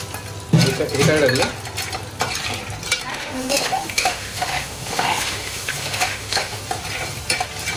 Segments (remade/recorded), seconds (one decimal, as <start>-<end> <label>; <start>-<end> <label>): 0.0-3.1 recorded; 3.1-6.6 remade; 6.6-7.8 recorded